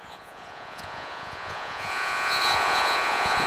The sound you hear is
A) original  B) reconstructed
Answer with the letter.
B